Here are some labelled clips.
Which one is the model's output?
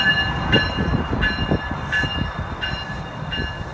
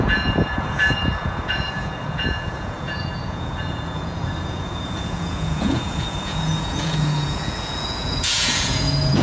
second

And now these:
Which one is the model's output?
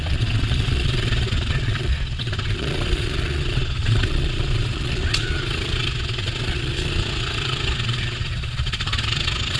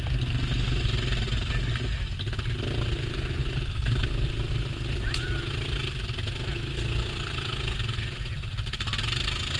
first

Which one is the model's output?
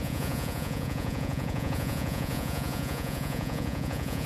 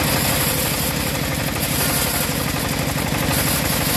first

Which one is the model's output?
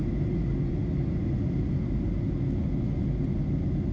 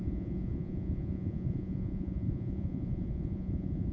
second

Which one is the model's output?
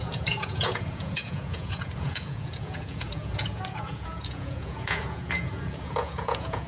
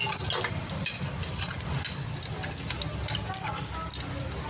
first